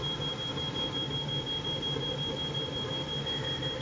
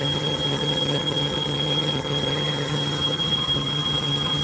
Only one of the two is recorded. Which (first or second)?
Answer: first